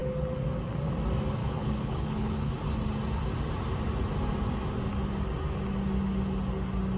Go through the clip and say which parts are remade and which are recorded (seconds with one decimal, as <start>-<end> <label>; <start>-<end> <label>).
0.0-1.4 recorded; 1.4-2.5 remade; 2.5-7.0 recorded